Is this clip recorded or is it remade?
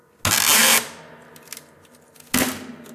recorded